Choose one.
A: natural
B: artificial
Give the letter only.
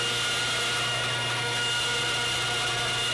A